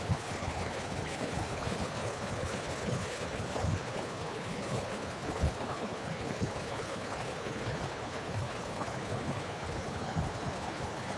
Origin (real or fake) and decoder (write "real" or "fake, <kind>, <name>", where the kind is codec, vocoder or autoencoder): fake, codec, HILCodec